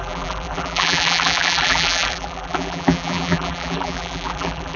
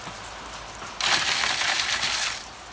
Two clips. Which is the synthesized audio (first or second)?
first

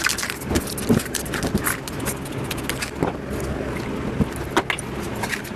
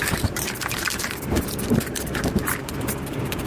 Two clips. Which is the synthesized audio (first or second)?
second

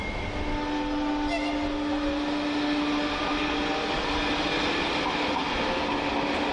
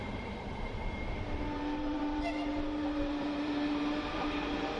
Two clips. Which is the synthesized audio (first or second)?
second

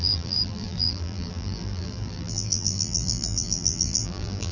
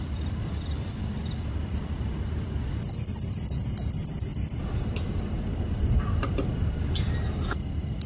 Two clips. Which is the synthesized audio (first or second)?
first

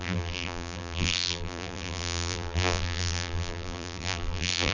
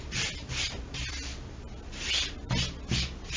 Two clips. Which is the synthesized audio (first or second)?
first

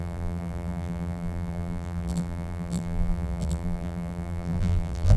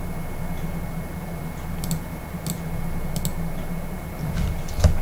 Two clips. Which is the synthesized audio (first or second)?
first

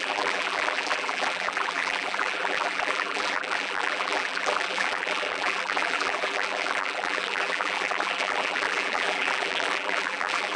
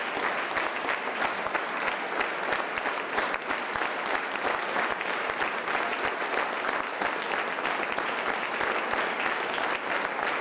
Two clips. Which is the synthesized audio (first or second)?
first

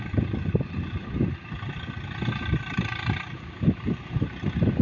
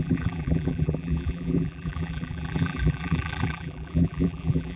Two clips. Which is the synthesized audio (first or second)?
second